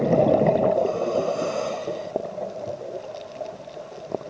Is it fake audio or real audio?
real